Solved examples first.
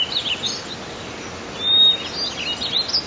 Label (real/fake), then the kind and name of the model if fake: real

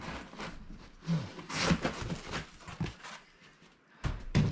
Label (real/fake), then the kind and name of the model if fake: real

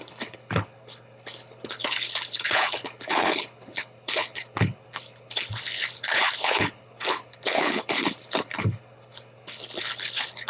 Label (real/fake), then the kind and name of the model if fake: fake, codec, HILCodec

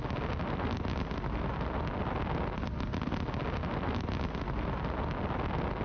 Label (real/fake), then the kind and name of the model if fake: real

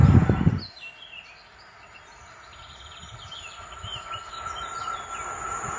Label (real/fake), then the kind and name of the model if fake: real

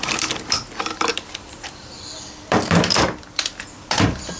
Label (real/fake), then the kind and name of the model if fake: fake, vocoder, BigVGAN v2